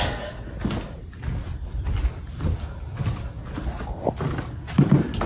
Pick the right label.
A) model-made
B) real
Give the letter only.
B